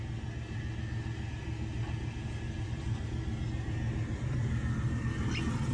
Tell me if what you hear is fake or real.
real